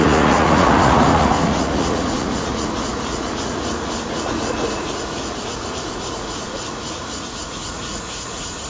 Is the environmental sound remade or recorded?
remade